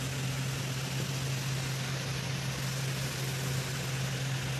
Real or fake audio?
real